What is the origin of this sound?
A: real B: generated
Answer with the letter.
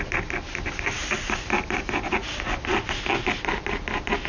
A